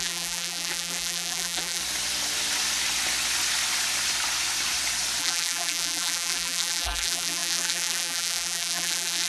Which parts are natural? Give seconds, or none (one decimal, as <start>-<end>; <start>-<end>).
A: 1.8-5.2